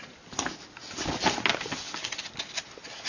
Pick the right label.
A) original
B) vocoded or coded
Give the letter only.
A